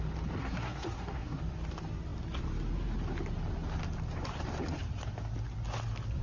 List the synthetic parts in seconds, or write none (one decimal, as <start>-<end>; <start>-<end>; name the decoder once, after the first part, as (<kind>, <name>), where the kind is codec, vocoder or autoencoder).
0.4-1.4 (codec, SNAC)